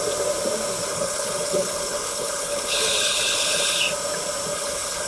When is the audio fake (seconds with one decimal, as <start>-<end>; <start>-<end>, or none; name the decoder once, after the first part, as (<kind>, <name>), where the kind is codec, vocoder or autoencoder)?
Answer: 0.9-3.7 (codec, HILCodec); 4.5-5.1

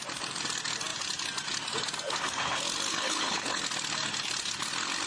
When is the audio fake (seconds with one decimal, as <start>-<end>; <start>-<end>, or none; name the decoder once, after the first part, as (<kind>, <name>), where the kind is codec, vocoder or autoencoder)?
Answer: 2.9-3.6 (codec, HILCodec)

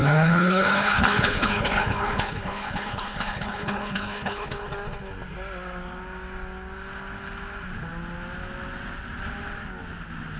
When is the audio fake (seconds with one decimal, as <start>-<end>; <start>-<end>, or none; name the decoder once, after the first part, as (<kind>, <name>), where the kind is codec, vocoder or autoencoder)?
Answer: 0.0-4.7 (codec, HILCodec)

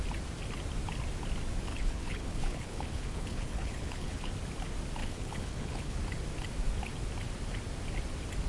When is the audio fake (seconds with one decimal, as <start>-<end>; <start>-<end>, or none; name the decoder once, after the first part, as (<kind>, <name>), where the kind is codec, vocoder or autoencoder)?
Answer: 1.7-4.3 (codec, HILCodec); 5.0-6.0

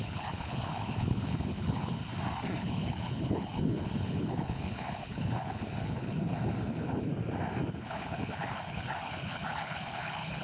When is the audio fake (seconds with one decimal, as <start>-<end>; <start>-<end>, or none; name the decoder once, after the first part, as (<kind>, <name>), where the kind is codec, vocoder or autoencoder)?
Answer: 0.0-2.0 (codec, HILCodec); 2.6-7.1; 7.7-10.4

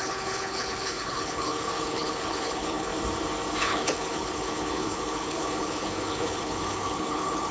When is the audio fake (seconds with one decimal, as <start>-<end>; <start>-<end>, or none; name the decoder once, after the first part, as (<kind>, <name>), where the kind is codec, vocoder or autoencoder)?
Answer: 0.0-2.9 (codec, HILCodec); 3.6-7.5

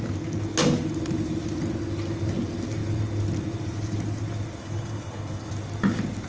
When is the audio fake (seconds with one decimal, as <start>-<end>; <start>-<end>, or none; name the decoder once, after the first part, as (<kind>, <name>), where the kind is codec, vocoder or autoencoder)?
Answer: 4.6-5.5 (codec, HILCodec)